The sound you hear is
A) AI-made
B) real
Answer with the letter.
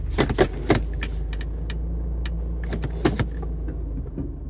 B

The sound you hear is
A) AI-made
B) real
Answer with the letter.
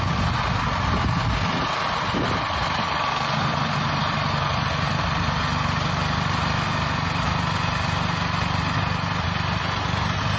B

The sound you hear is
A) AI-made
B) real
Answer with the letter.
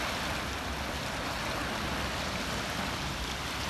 B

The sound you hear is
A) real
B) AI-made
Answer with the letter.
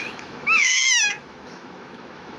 B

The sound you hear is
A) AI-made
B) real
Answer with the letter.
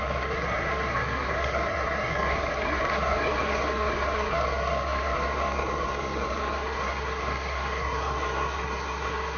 A